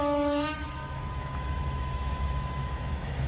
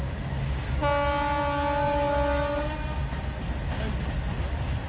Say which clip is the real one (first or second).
second